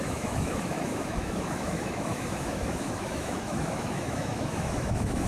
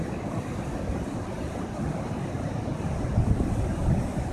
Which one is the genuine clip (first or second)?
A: second